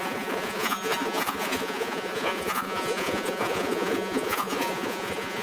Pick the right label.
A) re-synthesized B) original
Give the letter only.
A